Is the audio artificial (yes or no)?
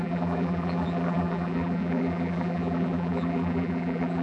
yes